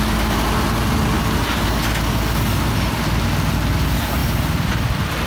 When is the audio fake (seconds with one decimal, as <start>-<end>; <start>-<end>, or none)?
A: none